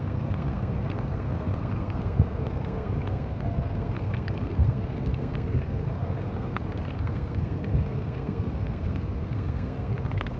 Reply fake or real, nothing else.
fake